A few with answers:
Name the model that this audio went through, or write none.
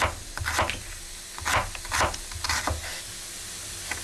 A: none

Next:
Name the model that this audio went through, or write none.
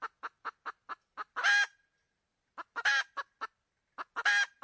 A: none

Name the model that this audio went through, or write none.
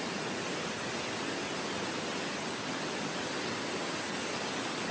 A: none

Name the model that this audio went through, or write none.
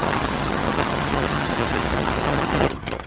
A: vocoder, HiFi-GAN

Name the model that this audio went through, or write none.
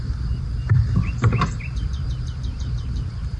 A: vocoder, BigVGAN v2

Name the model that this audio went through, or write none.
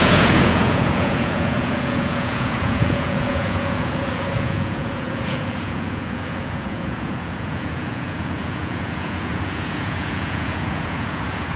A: vocoder, Vocos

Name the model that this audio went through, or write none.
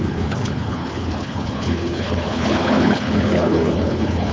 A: codec, HILCodec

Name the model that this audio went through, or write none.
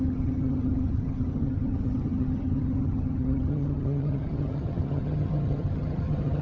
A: vocoder, HiFi-GAN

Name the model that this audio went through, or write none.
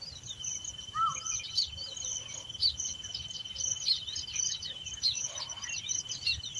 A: vocoder, BigVGAN v2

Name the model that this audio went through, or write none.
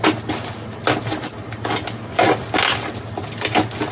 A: none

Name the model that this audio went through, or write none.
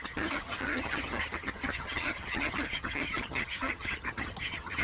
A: vocoder, HiFi-GAN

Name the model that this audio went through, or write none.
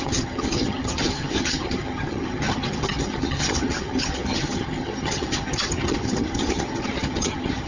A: vocoder, HiFi-GAN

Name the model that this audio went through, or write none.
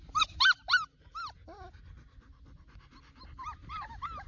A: none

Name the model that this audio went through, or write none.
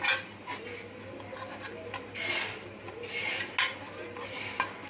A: none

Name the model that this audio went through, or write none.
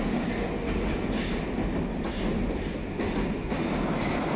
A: none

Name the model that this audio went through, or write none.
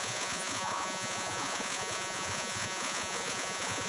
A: vocoder, Vocos